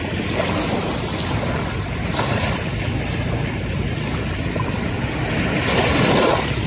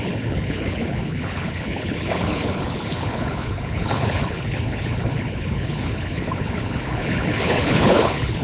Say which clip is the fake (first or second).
second